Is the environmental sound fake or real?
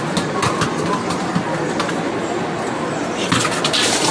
real